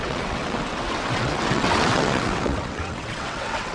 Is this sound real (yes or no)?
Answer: no